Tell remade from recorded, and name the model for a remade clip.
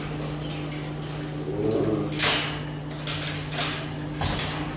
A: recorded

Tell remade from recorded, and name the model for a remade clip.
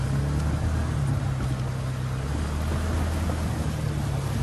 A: recorded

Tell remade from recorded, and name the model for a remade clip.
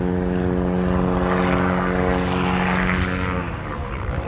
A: recorded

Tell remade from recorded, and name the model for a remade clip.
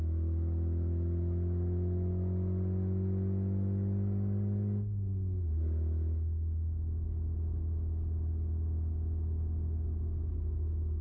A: recorded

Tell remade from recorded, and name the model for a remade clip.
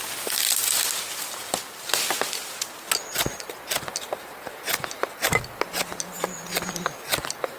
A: recorded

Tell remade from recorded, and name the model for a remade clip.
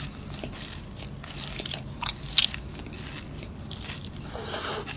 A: remade, vocoder, BigVGAN v2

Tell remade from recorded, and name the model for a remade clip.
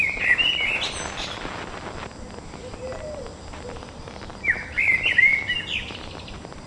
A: remade, vocoder, BigVGAN v2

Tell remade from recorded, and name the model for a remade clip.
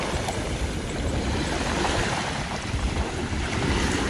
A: remade, vocoder, BigVGAN v2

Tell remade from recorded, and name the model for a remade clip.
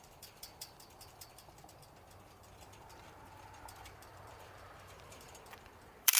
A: remade, vocoder, BigVGAN v2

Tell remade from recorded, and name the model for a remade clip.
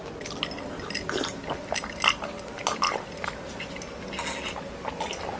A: recorded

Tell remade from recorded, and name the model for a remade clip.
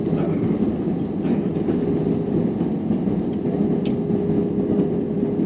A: recorded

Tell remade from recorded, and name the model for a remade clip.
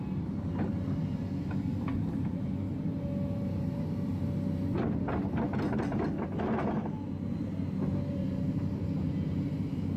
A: recorded